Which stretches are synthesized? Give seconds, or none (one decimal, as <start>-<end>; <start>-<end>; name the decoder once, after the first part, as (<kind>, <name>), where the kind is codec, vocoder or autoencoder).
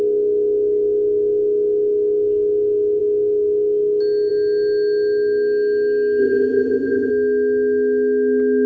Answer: 6.2-7.1 (vocoder, HiFi-GAN)